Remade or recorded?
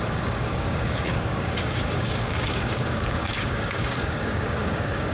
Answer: remade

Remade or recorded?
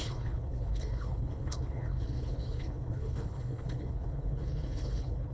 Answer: remade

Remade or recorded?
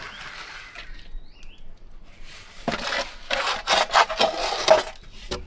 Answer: recorded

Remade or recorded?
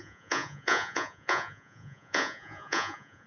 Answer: remade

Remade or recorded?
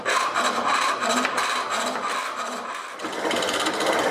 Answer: recorded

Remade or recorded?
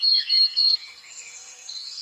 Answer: remade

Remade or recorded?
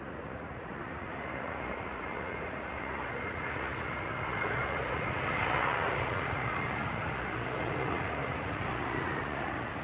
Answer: remade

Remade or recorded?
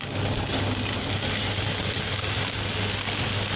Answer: recorded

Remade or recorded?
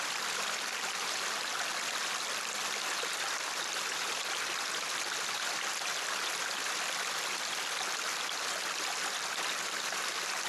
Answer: recorded